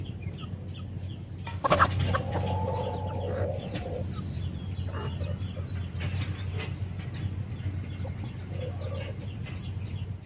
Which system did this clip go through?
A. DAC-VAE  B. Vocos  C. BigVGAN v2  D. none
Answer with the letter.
D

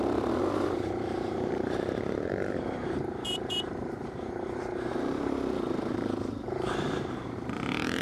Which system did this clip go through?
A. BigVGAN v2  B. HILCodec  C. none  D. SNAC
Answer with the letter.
A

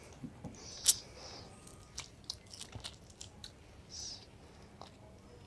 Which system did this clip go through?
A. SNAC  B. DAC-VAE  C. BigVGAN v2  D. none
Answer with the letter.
D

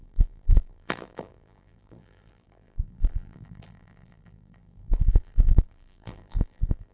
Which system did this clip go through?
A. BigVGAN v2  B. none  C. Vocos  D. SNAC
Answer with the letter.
A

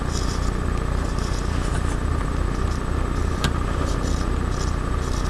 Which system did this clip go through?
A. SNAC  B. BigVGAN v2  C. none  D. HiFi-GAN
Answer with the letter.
C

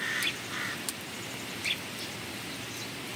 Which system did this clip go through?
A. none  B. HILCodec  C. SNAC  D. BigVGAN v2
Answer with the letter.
A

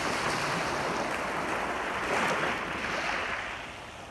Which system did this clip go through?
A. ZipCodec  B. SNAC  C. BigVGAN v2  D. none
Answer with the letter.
D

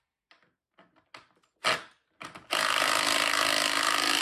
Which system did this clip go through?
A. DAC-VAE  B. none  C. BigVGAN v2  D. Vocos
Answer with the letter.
B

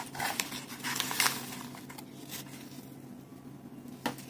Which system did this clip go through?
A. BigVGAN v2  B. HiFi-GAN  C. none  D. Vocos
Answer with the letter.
C